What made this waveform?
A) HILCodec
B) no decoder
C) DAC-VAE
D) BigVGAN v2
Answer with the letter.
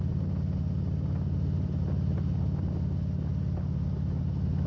B